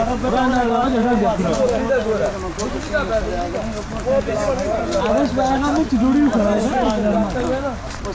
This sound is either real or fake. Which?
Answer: real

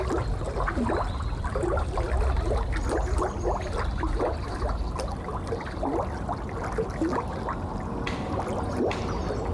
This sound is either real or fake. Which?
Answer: real